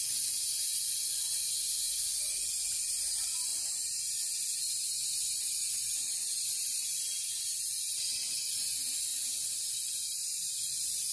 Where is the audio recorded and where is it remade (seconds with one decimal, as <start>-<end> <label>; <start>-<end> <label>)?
0.0-9.1 recorded; 9.1-11.1 remade